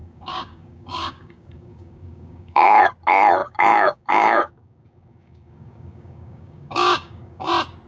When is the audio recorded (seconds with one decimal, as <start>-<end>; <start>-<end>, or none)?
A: 2.8-3.4; 7.5-7.9